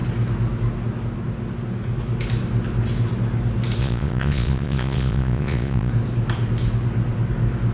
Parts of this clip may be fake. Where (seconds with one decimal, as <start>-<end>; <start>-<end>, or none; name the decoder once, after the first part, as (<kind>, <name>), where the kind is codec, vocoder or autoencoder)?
3.8-5.9 (vocoder, Vocos)